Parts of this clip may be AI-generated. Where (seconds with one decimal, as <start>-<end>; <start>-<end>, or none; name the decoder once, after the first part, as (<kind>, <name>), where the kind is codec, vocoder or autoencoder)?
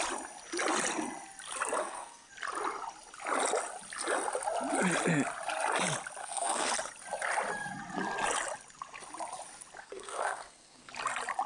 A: 1.8-2.3 (codec, SNAC); 6.2-6.7; 9.8-10.9